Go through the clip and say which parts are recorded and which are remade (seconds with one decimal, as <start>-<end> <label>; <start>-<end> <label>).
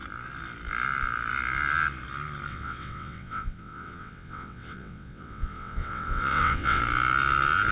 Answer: 0.0-2.5 recorded; 2.5-6.8 remade; 6.8-7.7 recorded